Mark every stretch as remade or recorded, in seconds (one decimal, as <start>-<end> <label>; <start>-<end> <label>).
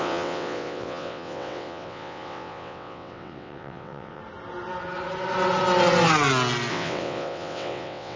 0.0-4.2 remade; 4.2-6.7 recorded; 6.7-8.2 remade